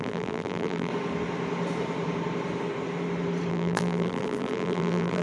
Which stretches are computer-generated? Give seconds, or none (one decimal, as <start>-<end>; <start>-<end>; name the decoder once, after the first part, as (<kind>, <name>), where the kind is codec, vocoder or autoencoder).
0.0-0.9 (vocoder, BigVGAN v2); 3.5-5.2